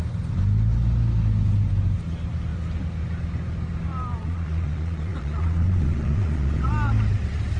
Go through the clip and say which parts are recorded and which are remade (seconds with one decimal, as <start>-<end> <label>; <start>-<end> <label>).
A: 0.0-4.2 recorded; 4.2-6.7 remade; 6.7-7.6 recorded